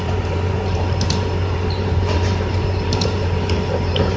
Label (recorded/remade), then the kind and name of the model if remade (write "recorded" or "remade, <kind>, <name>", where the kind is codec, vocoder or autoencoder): remade, vocoder, BigVGAN v2